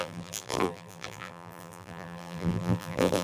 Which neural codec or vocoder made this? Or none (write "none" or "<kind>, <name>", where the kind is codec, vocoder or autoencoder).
vocoder, BigVGAN v2